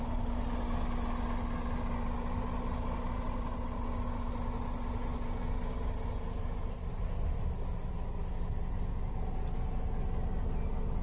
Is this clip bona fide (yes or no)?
yes